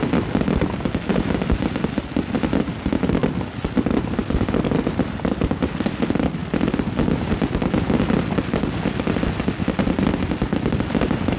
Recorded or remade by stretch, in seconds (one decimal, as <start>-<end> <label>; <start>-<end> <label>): 0.0-11.4 recorded